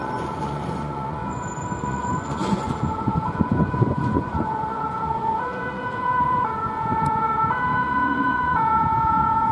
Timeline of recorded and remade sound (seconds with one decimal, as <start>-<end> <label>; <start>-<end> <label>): 0.0-1.2 remade; 1.2-1.8 recorded; 1.8-9.5 remade